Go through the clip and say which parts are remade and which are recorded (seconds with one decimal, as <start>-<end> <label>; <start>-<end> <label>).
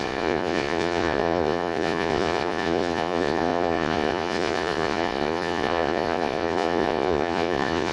0.0-7.9 remade